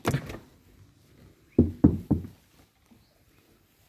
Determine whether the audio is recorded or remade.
recorded